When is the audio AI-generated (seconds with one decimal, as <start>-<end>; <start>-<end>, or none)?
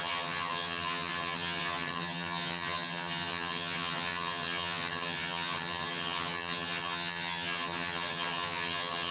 0.0-9.1